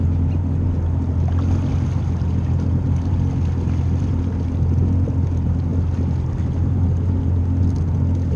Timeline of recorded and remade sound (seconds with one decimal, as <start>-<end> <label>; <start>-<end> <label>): 0.0-8.4 recorded